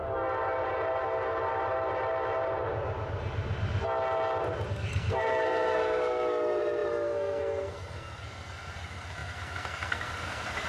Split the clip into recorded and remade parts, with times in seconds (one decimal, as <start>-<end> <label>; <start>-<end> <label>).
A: 0.0-4.7 recorded; 4.7-10.7 remade